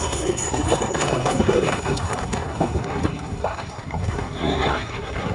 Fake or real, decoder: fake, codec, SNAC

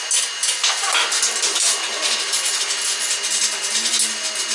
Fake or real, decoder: real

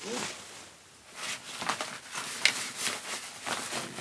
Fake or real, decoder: real